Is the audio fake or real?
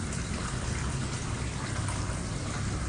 real